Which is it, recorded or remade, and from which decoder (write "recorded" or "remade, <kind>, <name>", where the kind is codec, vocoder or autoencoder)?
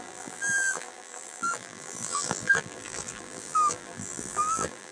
remade, vocoder, BigVGAN v2